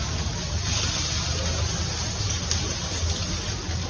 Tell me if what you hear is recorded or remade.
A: recorded